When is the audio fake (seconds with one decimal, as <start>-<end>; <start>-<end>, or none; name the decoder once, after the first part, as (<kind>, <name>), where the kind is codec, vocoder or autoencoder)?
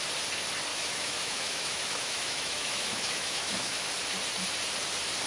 0.7-3.9 (autoencoder, DAC-VAE)